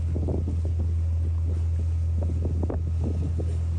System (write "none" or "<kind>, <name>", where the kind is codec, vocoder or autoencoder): none